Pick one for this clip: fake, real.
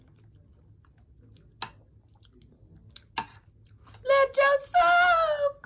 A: real